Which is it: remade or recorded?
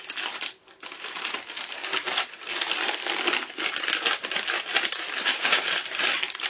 recorded